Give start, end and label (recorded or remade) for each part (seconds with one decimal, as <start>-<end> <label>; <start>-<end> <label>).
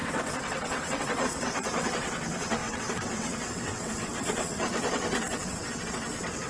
0.0-6.5 remade